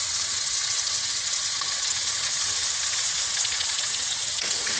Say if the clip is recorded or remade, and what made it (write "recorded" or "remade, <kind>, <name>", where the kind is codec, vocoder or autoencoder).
remade, vocoder, WaveNeXt